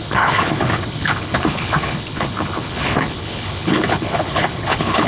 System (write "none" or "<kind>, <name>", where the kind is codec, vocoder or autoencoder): codec, HILCodec